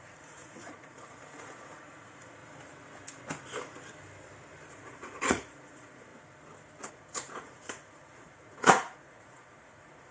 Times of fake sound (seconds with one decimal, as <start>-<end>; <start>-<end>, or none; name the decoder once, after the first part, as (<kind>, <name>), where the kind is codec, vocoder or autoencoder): 0.0-2.4 (vocoder, Vocos); 4.7-6.1; 6.9-10.1